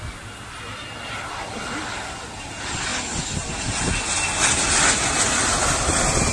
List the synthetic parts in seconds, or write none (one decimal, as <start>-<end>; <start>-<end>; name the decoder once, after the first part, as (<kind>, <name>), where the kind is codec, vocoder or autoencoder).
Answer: none